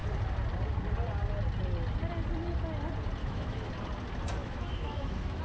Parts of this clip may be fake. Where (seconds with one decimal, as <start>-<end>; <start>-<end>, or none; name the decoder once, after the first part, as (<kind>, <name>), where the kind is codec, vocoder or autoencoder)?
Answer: 3.2-3.7 (autoencoder, DAC-VAE); 4.4-5.4